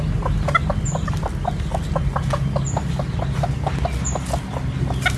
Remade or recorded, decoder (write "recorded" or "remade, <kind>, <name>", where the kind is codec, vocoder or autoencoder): recorded